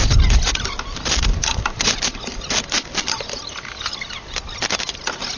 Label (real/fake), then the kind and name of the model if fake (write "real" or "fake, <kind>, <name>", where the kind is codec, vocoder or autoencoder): real